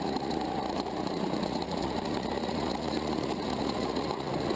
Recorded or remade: remade